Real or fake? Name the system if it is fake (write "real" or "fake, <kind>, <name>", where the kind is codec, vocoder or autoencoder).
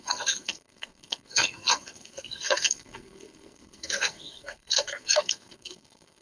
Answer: fake, codec, SNAC